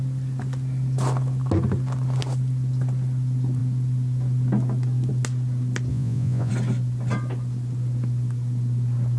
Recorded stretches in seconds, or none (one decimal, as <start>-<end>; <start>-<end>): 0.0-5.9; 6.5-9.2